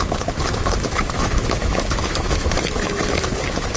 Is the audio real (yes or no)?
no